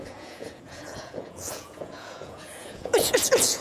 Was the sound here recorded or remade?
remade